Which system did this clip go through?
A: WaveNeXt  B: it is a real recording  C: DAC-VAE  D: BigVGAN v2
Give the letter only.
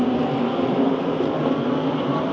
B